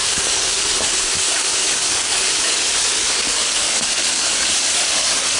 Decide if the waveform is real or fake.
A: fake